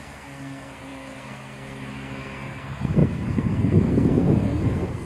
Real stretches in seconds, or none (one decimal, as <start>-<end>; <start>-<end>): none